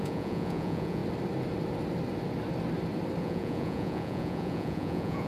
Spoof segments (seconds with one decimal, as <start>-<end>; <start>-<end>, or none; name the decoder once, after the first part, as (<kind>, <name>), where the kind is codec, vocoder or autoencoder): 0.0-1.0 (vocoder, Vocos); 3.2-5.3